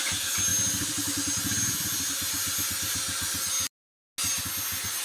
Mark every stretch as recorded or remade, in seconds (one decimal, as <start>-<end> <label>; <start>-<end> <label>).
0.0-5.0 recorded